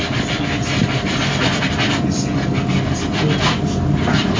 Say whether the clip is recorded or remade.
recorded